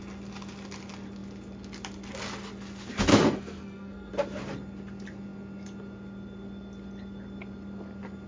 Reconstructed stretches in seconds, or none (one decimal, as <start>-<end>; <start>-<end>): 3.1-4.1